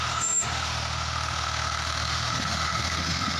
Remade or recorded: remade